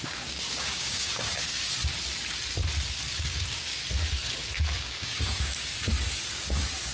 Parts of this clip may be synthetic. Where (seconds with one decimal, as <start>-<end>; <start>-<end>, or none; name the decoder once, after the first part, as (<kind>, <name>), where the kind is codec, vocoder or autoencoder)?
0.0-1.8 (codec, DAC); 3.1-3.8; 4.8-5.7; 6.3-6.9